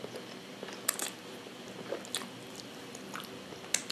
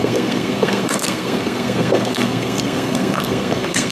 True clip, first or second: first